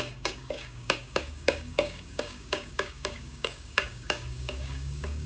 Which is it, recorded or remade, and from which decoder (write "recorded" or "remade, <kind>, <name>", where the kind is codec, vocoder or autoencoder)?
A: remade, codec, DAC